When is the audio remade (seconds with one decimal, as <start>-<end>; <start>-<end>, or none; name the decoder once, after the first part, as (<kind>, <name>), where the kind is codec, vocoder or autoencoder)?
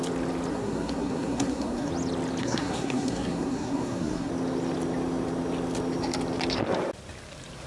0.5-1.9 (codec, SNAC); 2.4-4.3